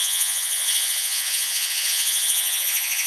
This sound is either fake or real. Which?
fake